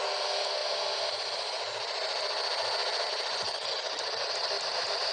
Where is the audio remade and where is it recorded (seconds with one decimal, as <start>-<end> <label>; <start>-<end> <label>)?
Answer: 0.0-5.1 recorded